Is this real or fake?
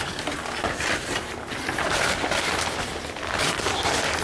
fake